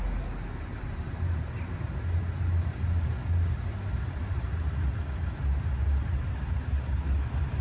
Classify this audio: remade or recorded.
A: recorded